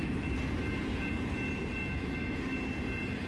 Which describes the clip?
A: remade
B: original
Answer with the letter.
B